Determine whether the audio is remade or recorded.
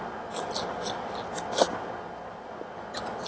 recorded